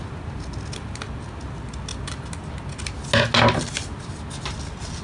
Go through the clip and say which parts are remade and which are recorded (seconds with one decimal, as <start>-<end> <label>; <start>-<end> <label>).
0.0-5.0 recorded